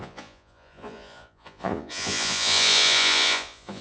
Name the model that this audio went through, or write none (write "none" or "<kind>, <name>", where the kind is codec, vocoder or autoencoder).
vocoder, Vocos